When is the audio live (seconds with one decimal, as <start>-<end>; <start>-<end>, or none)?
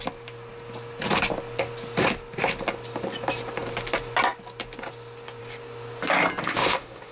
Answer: 0.0-6.4